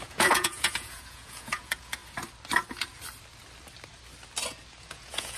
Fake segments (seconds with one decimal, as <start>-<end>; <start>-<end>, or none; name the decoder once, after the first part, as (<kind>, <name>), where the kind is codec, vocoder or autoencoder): 0.0-2.0 (vocoder, Vocos); 4.8-5.4